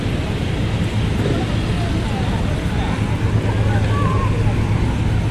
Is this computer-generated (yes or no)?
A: no